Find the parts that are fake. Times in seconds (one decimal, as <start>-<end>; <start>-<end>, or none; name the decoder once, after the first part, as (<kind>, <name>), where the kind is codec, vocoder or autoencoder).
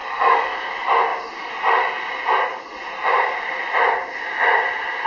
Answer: 0.0-0.7 (codec, DAC)